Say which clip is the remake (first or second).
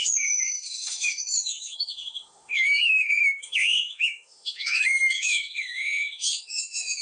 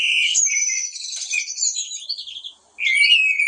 first